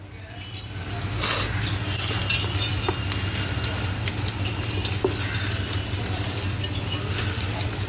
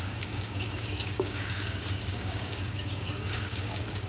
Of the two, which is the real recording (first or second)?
first